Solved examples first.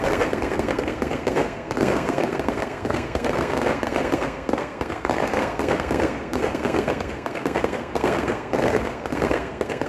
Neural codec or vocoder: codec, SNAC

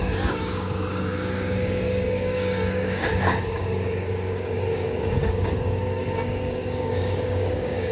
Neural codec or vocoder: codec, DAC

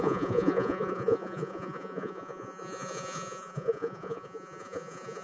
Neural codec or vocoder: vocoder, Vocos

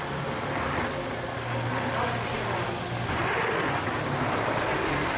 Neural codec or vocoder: none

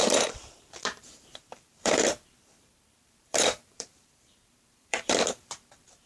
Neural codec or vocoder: vocoder, BigVGAN v2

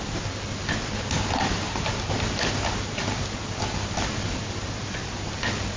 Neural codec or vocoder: none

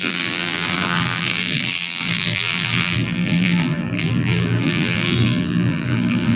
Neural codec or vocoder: vocoder, BigVGAN v2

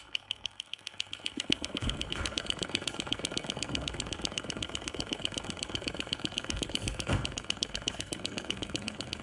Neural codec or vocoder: codec, SNAC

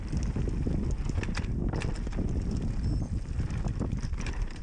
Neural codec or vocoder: none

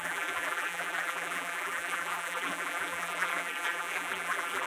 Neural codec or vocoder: vocoder, BigVGAN v2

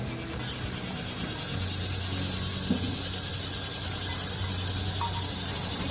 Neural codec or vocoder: none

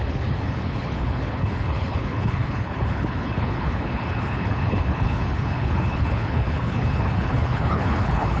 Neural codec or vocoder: codec, HILCodec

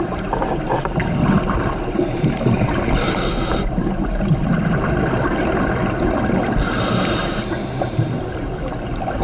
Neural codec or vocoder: none